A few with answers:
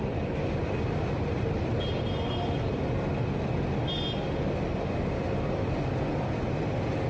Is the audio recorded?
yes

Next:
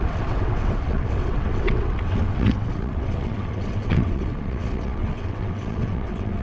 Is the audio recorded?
no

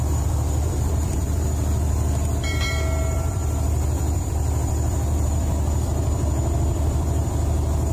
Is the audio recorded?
no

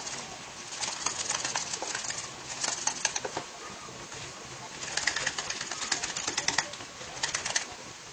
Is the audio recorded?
yes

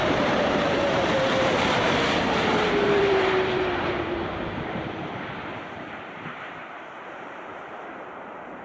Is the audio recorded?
no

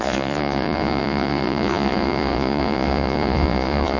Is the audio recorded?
no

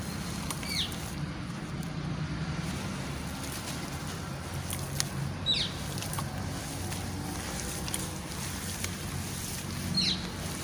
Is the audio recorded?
yes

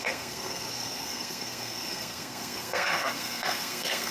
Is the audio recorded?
no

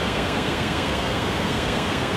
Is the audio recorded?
no